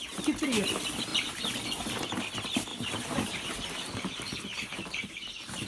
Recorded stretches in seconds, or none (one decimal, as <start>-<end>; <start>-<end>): 0.0-1.1; 2.2-2.7